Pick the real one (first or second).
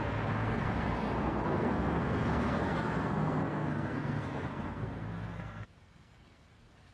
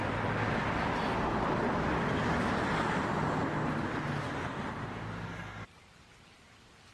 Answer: second